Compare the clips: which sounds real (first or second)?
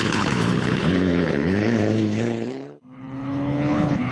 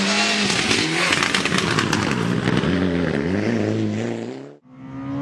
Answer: second